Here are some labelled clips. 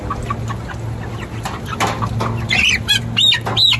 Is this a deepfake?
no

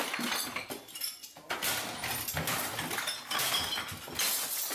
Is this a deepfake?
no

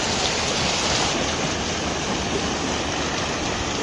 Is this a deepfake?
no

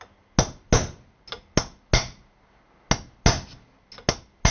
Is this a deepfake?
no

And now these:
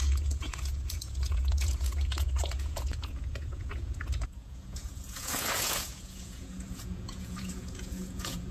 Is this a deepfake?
yes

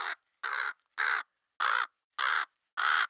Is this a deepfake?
no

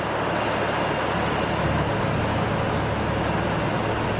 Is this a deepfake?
no